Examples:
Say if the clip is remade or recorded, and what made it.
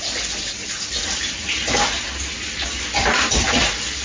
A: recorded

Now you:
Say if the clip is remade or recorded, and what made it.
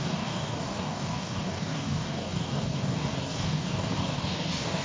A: remade, codec, DAC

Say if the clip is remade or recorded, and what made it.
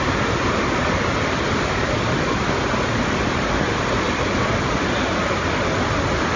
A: recorded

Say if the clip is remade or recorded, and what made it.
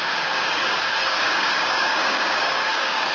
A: remade, codec, DAC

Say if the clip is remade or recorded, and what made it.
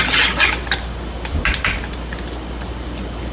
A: recorded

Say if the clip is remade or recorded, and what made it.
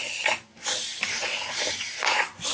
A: recorded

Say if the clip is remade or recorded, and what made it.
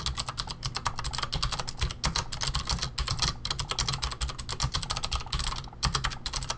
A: recorded